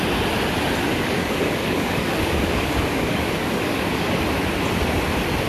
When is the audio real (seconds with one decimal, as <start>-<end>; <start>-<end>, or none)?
0.0-0.9; 4.2-5.5